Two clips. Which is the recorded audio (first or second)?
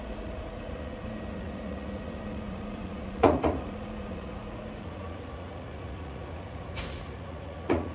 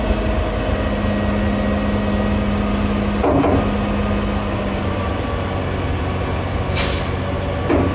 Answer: second